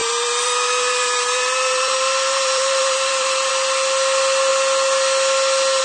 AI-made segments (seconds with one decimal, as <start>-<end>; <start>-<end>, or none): 0.0-3.5